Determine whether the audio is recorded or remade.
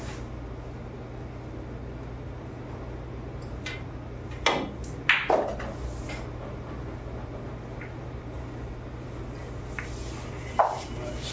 recorded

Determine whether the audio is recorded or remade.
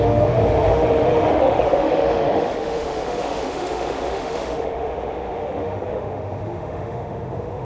remade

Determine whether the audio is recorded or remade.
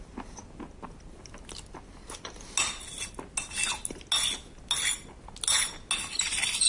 recorded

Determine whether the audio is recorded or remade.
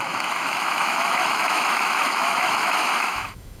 remade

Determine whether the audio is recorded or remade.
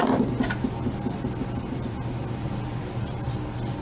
recorded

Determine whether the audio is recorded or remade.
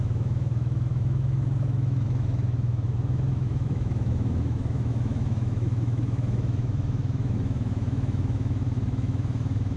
remade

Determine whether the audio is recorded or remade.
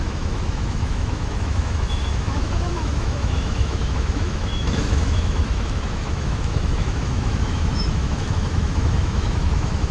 remade